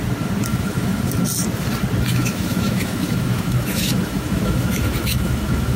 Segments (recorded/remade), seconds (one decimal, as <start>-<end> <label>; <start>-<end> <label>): 0.0-0.5 recorded; 0.5-1.1 remade; 1.1-2.1 recorded; 2.1-5.8 remade